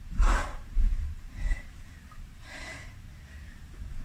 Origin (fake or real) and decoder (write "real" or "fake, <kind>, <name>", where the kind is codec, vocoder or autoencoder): fake, vocoder, BigVGAN v2